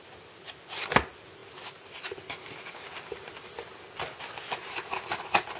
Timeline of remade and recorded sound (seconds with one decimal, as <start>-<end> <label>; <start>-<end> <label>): 0.0-5.6 recorded